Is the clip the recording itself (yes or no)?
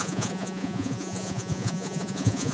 no